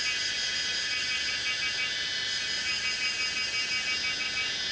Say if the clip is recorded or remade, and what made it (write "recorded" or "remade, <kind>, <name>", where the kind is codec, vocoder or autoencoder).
recorded